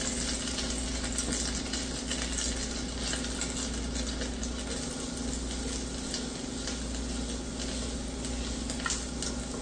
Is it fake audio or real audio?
real